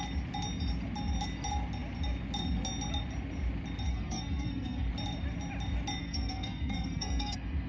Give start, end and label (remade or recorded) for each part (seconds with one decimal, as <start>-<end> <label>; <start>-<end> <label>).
0.0-3.9 recorded; 3.9-4.9 remade; 4.9-6.0 recorded; 6.0-7.7 remade